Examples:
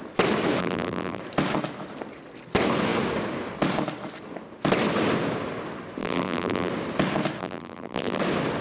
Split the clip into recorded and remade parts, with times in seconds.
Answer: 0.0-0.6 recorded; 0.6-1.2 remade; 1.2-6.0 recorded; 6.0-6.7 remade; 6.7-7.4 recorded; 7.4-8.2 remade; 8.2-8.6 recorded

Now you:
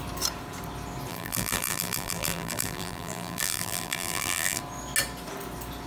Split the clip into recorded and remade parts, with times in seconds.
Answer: 0.0-1.1 recorded; 1.1-4.6 remade; 4.6-5.9 recorded

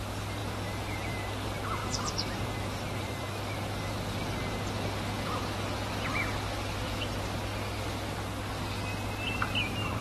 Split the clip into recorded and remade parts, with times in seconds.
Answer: 0.0-1.8 recorded; 1.8-2.9 remade; 2.9-10.0 recorded

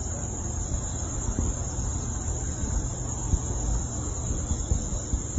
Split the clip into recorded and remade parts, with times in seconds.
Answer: 0.0-1.7 remade; 1.7-5.4 recorded

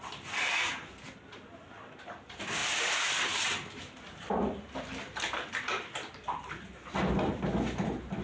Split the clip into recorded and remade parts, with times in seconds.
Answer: 0.0-2.6 recorded; 2.6-6.9 remade; 6.9-8.2 recorded